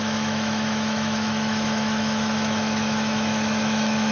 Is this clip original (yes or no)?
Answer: no